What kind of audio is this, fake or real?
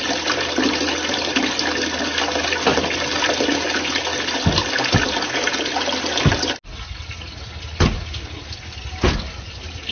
real